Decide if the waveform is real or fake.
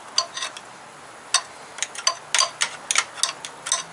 real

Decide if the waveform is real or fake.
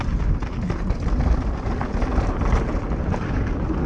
real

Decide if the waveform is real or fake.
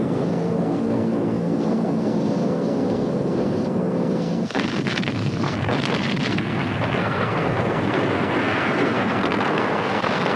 fake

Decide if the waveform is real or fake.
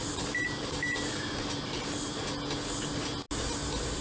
real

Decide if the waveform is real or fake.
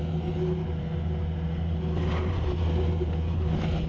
real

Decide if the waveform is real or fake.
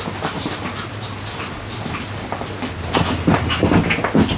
real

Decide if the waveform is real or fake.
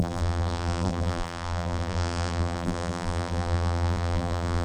fake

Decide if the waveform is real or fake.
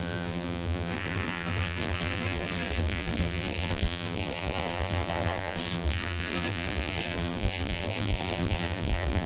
fake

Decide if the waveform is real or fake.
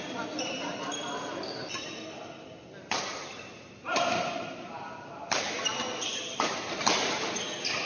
real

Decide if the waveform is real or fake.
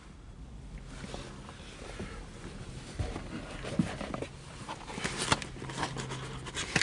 real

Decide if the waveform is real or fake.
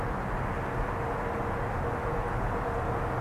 real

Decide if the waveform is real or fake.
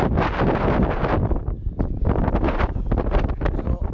real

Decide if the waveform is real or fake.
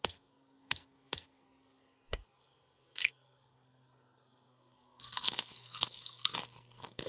fake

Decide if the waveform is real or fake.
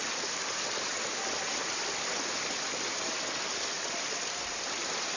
real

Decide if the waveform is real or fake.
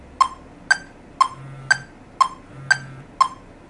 real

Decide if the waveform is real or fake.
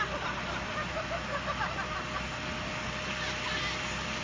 real